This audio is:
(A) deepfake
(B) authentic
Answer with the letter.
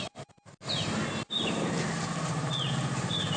B